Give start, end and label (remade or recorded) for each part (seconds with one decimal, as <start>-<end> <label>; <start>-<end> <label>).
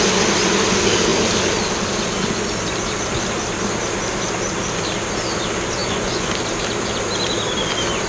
0.0-5.8 recorded; 5.8-6.3 remade; 6.3-8.1 recorded